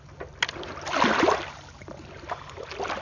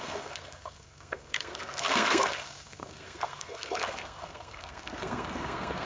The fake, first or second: second